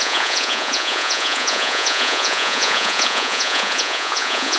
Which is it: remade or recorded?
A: remade